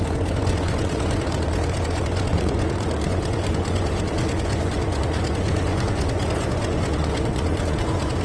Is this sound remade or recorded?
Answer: remade